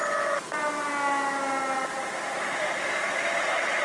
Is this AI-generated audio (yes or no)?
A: no